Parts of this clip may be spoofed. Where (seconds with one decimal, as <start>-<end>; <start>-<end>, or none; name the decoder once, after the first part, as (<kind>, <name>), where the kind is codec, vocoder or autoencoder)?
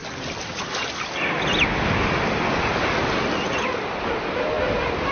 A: none